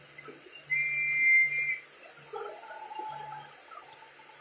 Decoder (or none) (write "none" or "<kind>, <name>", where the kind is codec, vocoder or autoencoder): none